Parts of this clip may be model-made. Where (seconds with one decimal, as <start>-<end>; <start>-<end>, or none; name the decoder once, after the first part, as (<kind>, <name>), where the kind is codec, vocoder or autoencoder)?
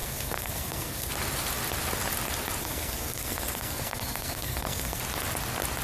0.0-1.1 (codec, SNAC); 2.6-5.0